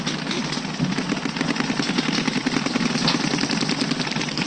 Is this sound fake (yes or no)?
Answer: no